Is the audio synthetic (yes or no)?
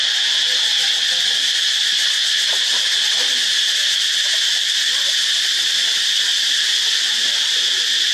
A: no